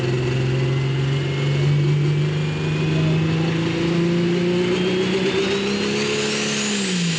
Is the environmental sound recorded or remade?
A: recorded